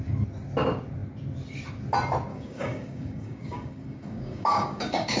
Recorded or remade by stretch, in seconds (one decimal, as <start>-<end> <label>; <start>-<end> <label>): 0.0-2.3 recorded; 2.3-5.2 remade